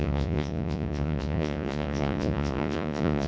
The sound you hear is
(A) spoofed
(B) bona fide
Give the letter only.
A